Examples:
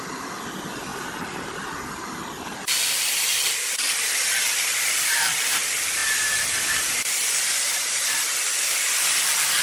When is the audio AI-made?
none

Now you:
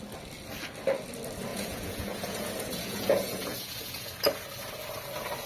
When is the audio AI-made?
1.5-4.1 (vocoder, Vocos)

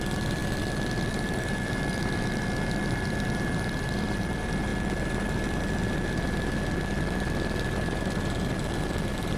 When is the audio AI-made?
0.0-0.4 (vocoder, BigVGAN v2); 1.1-4.7; 7.7-9.4

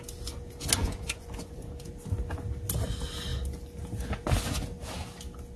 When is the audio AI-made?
0.8-1.9 (vocoder, Vocos)

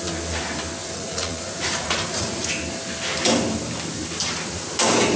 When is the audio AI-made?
0.8-2.5 (vocoder, Vocos)

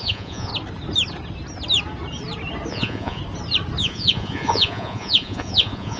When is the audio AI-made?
0.0-0.5 (vocoder, Vocos); 2.7-3.2; 3.8-6.0

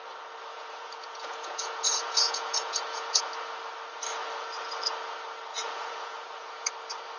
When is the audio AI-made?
0.5-3.2 (vocoder, Vocos); 5.5-6.7